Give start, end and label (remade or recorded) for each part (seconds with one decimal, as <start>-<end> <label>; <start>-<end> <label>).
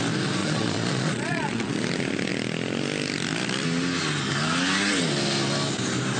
0.0-0.4 recorded; 0.4-1.7 remade; 1.7-6.2 recorded